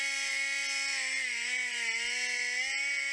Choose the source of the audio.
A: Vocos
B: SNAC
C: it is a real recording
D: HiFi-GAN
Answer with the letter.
C